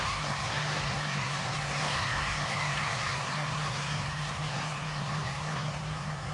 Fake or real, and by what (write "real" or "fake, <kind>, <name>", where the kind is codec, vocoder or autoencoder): fake, codec, SNAC